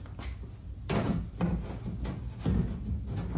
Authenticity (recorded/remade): recorded